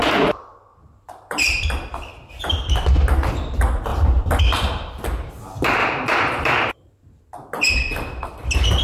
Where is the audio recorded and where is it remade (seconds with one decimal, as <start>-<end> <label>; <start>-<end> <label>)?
0.0-0.7 recorded; 0.7-1.6 remade; 1.6-3.9 recorded; 3.9-4.4 remade; 4.4-5.8 recorded; 5.8-7.2 remade; 7.2-8.8 recorded